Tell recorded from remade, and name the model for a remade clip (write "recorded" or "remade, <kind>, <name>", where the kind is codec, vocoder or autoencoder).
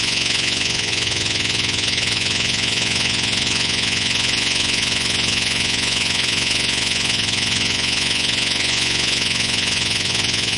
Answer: remade, vocoder, Vocos